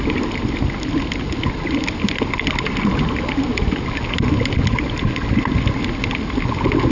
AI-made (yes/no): no